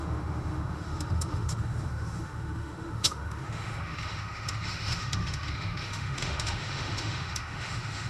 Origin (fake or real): fake